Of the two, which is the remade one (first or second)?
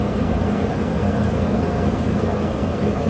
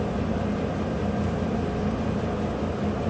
first